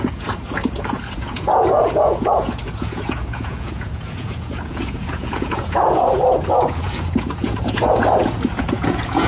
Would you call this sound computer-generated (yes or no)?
yes